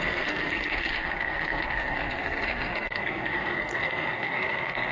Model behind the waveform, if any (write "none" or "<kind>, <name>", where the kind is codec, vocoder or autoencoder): codec, SNAC